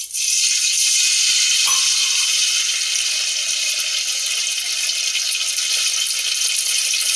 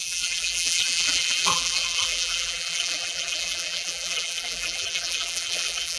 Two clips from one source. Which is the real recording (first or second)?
first